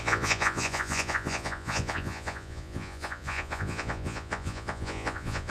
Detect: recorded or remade remade